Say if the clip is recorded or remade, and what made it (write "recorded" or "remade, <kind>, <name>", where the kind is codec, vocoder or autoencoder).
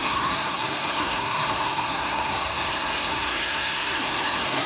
remade, codec, SNAC